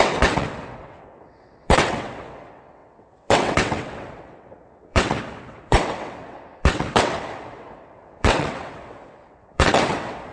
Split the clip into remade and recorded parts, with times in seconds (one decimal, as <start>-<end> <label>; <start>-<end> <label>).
0.0-10.3 remade